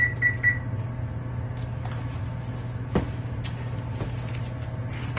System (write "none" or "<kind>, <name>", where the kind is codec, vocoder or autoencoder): none